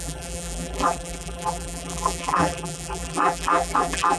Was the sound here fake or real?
fake